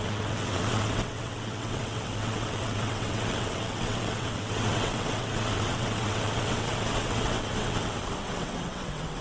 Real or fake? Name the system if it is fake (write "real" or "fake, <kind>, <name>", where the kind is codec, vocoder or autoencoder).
fake, vocoder, WaveNeXt